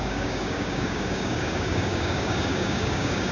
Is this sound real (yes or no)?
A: no